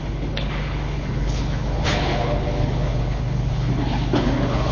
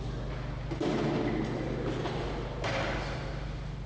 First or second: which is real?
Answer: second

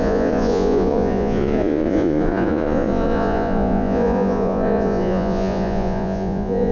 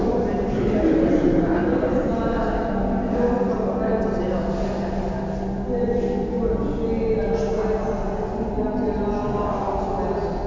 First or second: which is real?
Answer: second